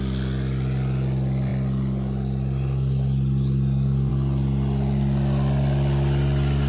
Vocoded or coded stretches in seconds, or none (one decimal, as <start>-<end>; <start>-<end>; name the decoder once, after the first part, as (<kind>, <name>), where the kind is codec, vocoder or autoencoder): none